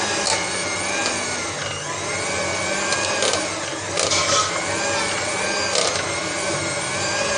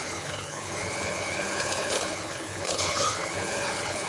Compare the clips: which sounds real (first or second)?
first